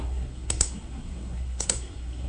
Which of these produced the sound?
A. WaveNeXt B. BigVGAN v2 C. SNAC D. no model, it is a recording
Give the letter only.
C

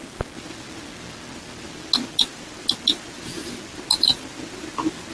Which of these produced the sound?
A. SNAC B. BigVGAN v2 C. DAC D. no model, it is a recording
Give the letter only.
D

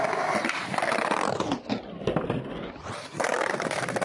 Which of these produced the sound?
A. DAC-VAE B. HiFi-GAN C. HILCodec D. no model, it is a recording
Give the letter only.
D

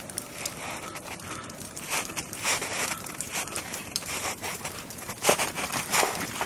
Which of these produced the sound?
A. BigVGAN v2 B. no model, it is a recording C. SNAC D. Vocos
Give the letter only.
A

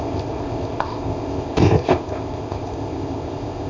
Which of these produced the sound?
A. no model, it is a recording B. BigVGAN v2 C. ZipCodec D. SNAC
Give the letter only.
C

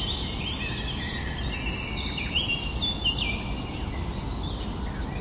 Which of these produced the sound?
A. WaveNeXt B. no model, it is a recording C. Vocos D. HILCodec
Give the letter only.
B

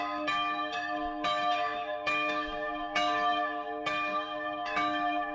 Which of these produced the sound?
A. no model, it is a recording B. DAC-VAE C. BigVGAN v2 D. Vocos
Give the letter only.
B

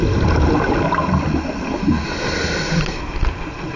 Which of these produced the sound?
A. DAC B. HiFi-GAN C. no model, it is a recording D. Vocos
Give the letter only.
C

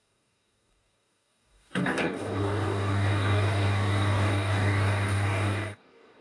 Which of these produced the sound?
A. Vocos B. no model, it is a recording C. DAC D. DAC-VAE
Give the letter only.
C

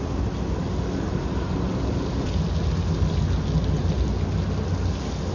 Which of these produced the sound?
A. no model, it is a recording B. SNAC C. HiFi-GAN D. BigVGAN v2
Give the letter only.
A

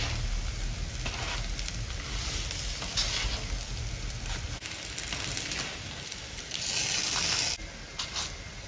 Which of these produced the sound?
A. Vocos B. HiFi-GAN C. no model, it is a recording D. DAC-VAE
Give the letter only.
C